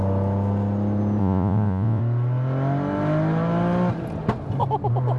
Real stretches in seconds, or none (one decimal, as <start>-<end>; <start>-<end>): 0.0-1.2; 2.0-5.2